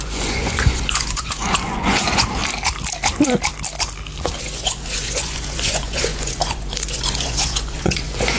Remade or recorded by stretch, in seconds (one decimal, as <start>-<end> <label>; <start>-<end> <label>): 0.0-2.4 remade; 2.4-4.4 recorded; 4.4-8.4 remade